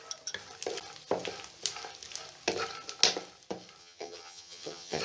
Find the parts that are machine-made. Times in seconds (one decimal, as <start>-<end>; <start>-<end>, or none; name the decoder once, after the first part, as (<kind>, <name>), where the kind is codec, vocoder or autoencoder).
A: 3.8-5.0 (vocoder, HiFi-GAN)